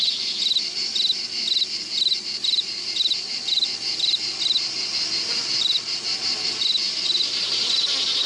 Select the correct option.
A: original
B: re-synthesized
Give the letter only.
A